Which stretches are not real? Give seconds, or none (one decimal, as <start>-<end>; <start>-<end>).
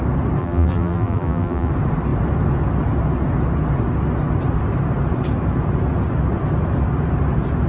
0.4-1.7